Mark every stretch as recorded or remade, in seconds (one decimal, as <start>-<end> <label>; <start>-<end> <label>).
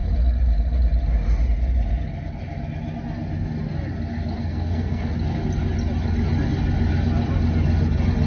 0.0-4.4 recorded; 4.4-5.1 remade; 5.1-8.3 recorded